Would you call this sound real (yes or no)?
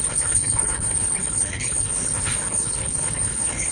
no